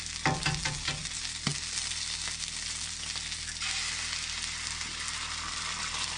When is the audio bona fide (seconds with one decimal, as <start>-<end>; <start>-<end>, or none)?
0.0-6.2